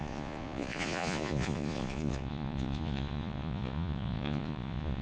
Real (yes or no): no